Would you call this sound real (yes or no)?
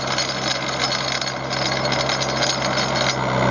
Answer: yes